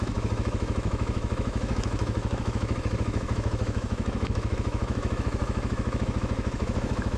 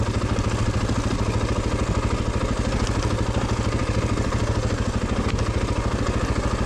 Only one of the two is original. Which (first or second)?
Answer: second